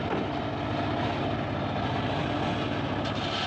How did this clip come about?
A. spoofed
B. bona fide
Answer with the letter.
B